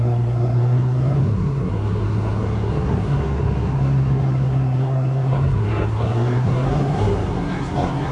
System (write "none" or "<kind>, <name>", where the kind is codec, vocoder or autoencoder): codec, SNAC